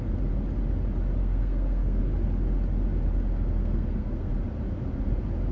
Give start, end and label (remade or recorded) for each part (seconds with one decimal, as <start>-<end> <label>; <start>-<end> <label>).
0.0-1.2 recorded; 1.2-2.0 remade; 2.0-3.6 recorded; 3.6-4.3 remade; 4.3-5.5 recorded